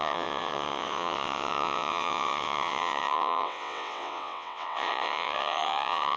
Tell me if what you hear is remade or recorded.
remade